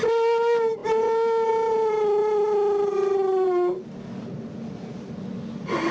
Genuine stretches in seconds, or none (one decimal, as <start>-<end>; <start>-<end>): 0.0-5.9